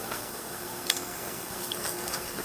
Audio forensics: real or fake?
fake